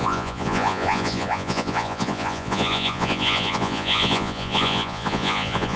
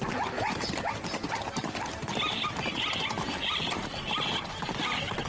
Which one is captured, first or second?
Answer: second